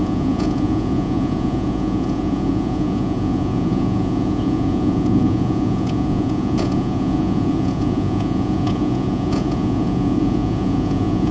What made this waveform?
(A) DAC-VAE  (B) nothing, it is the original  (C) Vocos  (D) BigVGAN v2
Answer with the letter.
C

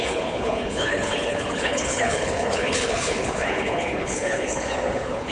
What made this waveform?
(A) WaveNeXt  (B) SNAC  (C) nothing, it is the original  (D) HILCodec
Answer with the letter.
D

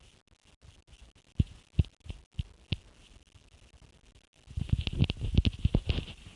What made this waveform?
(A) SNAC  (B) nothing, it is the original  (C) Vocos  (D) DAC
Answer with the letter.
B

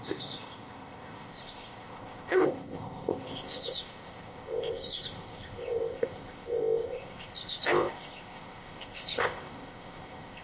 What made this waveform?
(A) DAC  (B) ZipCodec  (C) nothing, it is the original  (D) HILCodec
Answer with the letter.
B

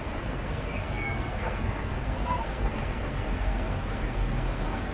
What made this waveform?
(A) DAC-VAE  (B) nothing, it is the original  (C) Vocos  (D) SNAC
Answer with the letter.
D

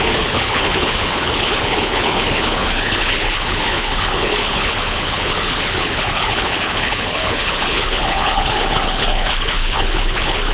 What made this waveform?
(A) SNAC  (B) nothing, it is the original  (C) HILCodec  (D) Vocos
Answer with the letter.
C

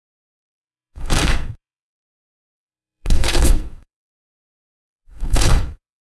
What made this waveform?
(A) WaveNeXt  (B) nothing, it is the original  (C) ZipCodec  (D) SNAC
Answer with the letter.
D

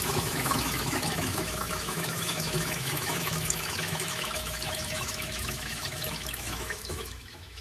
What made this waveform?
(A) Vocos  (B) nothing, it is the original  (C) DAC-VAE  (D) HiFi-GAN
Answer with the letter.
C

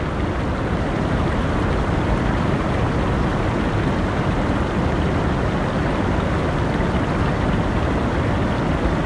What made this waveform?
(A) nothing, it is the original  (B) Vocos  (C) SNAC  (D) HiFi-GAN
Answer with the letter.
A